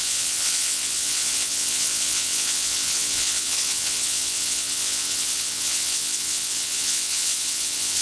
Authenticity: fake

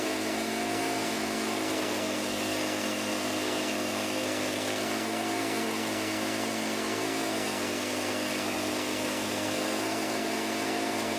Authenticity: fake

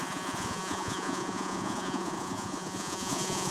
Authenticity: fake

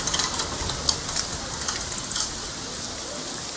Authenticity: real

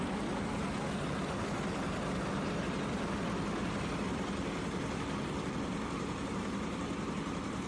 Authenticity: real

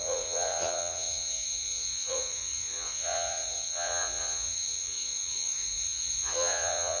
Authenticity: fake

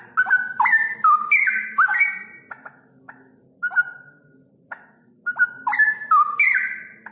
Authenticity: real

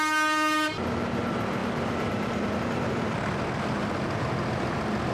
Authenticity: real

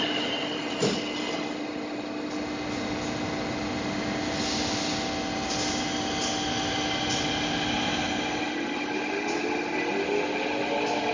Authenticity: real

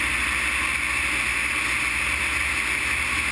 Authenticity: real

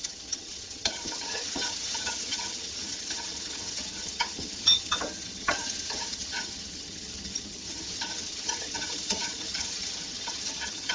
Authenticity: fake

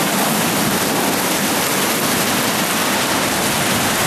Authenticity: real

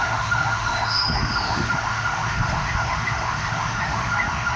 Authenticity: fake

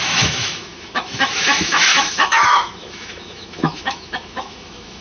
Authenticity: fake